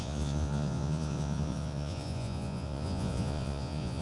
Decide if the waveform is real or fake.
fake